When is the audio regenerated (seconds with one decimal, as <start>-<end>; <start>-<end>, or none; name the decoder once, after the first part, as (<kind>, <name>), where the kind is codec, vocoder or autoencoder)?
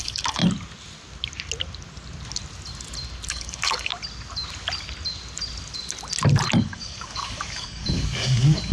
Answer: 0.0-0.4 (codec, DAC); 3.3-3.9; 6.6-8.7